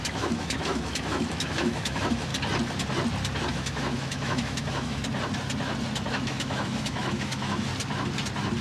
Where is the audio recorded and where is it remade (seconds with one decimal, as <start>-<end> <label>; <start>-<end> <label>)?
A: 0.0-2.3 remade; 2.3-3.5 recorded; 3.5-5.0 remade; 5.0-6.1 recorded; 6.1-7.7 remade; 7.7-8.6 recorded